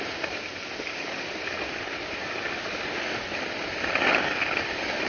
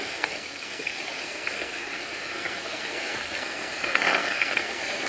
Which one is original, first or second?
first